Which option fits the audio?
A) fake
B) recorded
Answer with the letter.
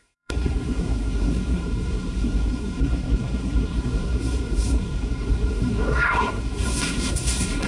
A